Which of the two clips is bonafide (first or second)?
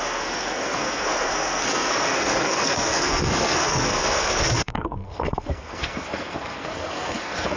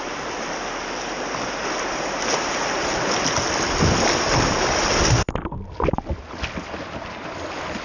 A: second